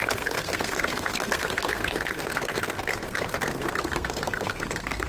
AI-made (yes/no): yes